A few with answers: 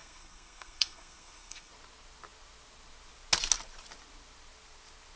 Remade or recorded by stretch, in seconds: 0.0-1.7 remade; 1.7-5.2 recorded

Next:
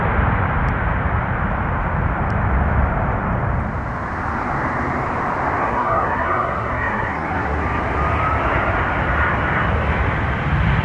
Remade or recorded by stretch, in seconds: 0.0-5.6 recorded; 5.6-7.6 remade; 7.6-10.8 recorded